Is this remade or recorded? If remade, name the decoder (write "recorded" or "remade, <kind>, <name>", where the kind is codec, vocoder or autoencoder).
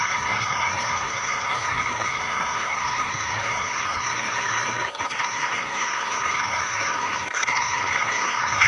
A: remade, codec, SNAC